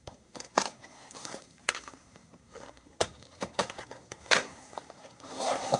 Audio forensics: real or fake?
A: fake